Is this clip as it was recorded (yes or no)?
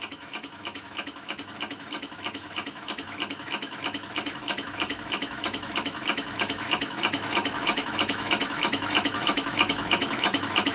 no